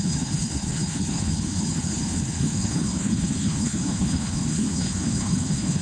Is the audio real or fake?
fake